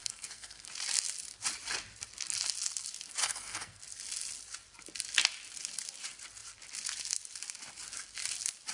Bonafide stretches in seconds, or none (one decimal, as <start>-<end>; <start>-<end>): 0.7-3.2; 3.8-8.7